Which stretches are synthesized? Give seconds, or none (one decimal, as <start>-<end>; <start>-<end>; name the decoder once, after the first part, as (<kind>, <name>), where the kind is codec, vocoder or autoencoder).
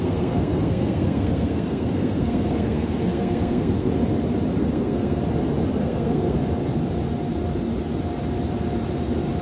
0.0-3.9 (codec, SNAC); 4.6-5.2; 5.8-6.4